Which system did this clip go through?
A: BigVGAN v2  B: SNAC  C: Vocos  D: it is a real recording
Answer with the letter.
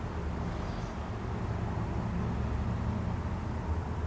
D